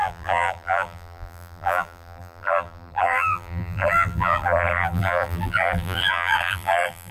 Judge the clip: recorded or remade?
remade